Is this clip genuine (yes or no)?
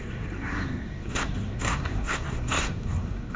no